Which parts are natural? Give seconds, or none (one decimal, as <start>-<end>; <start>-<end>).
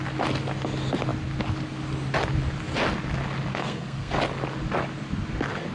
0.0-3.5; 4.1-5.7